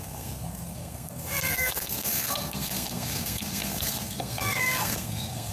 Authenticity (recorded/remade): remade